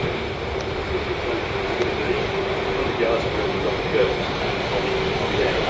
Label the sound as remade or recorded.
recorded